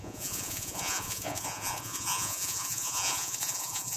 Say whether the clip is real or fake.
fake